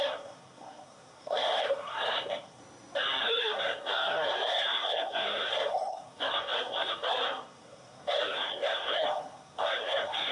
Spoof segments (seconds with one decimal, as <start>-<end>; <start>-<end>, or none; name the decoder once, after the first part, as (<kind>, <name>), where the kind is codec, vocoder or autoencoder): 0.0-2.6 (codec, SNAC); 3.2-10.3